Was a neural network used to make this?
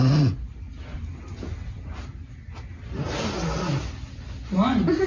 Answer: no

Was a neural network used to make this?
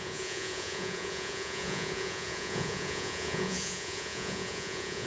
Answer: yes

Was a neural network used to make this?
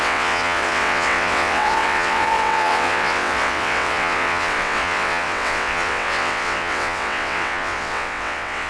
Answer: yes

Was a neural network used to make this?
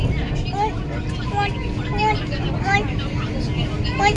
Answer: no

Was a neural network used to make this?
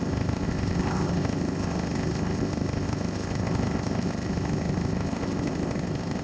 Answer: yes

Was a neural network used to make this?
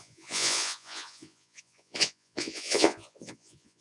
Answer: yes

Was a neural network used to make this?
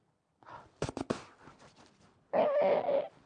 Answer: no